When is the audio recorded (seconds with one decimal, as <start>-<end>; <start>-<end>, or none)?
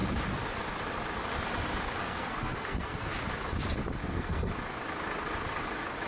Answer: 0.0-2.0; 3.1-4.0; 4.5-6.1